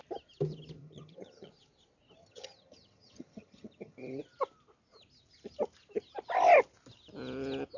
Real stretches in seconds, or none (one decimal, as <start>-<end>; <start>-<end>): 0.0-0.8; 1.5-2.2; 4.2-7.8